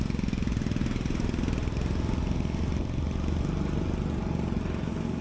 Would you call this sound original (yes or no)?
yes